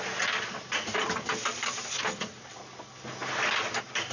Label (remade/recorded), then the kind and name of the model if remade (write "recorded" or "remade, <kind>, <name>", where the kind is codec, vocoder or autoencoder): recorded